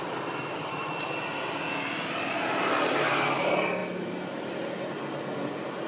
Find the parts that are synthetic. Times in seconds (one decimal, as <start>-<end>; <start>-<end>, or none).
none